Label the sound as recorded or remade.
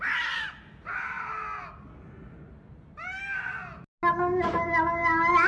recorded